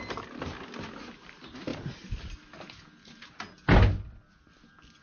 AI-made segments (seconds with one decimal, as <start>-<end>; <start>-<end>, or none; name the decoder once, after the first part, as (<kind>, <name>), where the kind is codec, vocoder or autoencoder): none